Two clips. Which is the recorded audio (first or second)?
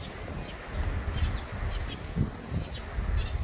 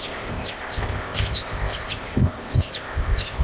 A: first